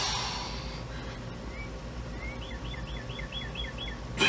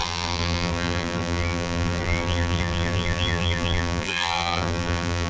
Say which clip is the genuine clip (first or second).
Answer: first